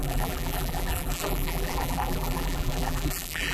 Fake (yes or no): yes